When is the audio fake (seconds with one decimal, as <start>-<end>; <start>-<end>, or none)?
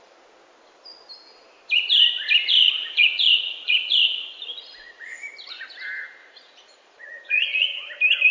2.5-5.3; 6.2-7.9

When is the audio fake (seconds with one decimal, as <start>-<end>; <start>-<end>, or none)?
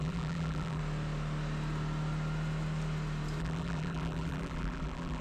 0.0-0.8; 3.4-5.2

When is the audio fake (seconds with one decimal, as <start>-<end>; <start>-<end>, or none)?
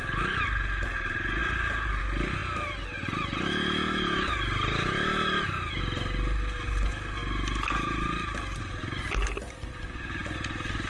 none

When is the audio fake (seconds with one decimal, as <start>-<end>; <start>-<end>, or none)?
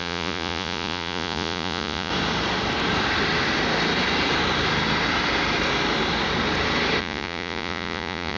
0.0-2.1; 7.0-8.4